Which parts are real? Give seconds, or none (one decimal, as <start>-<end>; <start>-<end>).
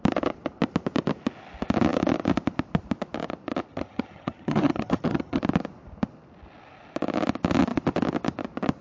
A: 0.0-3.7; 5.4-8.8